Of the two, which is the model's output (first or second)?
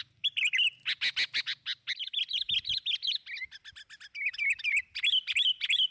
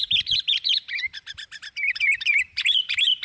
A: second